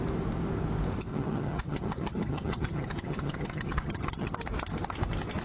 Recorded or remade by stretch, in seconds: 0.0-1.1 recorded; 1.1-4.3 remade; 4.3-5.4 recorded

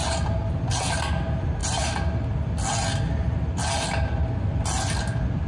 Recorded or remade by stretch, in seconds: 0.0-5.5 recorded

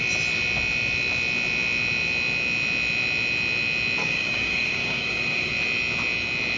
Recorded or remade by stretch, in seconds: 0.0-4.0 recorded; 4.0-5.5 remade; 5.5-6.6 recorded

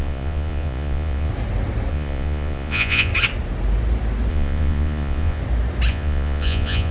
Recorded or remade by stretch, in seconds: 0.0-1.3 remade; 1.3-1.9 recorded; 1.9-3.1 remade; 3.1-4.3 recorded; 4.3-5.4 remade; 5.4-5.9 recorded; 5.9-6.9 remade

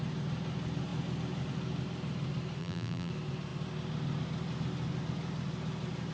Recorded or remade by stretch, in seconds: 0.0-2.6 recorded; 2.6-3.1 remade; 3.1-6.1 recorded

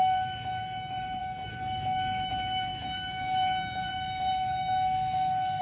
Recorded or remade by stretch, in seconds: 0.0-5.6 remade